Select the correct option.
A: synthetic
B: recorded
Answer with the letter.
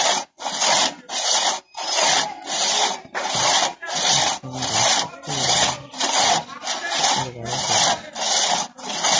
B